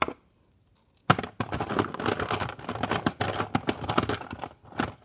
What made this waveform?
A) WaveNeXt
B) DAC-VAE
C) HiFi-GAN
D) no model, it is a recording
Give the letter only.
D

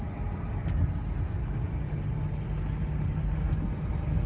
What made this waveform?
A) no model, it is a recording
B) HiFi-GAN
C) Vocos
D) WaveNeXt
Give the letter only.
A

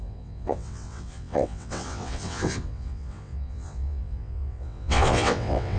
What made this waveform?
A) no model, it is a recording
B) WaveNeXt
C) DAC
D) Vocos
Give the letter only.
B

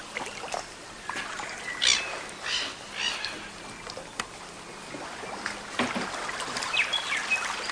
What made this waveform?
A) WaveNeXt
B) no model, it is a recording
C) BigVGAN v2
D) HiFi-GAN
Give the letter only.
B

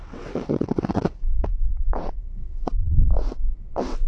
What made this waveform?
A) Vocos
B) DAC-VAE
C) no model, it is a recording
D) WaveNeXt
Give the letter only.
D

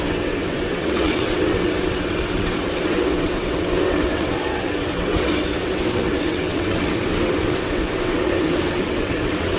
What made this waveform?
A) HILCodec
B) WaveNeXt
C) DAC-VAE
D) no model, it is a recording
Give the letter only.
B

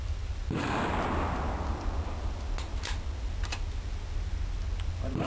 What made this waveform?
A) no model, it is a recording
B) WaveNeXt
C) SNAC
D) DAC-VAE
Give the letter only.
A